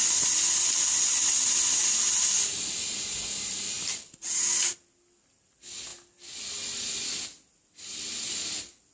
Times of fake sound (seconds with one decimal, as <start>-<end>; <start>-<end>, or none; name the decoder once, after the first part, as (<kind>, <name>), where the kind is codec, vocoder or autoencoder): none